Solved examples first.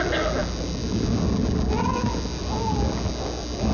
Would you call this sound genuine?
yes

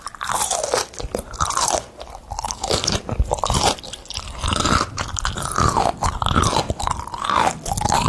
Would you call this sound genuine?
yes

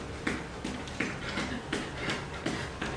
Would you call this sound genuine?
yes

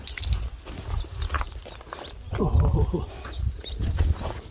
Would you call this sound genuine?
yes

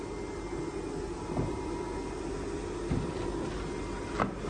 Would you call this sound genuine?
yes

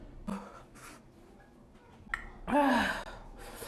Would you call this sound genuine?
yes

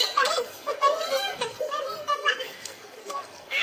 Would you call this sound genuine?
no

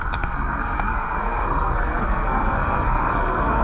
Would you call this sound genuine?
no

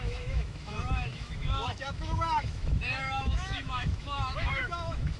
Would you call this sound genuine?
no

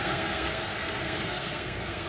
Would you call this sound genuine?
no